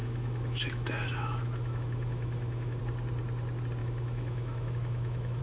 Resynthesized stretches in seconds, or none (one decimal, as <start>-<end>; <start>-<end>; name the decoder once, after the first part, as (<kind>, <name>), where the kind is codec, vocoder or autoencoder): 0.0-2.8 (autoencoder, DAC-VAE); 3.8-5.4